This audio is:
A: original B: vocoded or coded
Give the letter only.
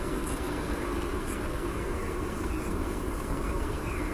B